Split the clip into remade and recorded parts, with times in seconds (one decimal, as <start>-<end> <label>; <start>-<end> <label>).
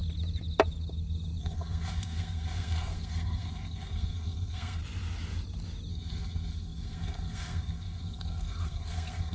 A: 0.0-1.4 recorded; 1.4-4.8 remade; 4.8-5.9 recorded; 5.9-9.3 remade